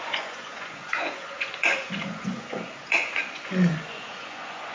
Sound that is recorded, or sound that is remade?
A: remade